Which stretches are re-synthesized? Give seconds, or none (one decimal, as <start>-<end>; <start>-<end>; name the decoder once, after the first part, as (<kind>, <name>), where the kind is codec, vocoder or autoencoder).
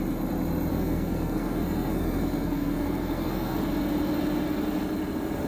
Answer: 0.7-3.6 (codec, SNAC)